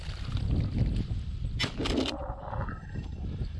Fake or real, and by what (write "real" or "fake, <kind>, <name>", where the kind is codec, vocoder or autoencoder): real